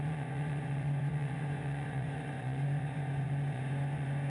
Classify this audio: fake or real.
fake